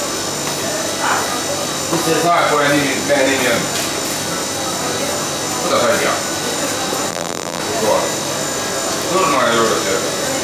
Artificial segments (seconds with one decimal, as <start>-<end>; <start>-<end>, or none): 7.1-7.6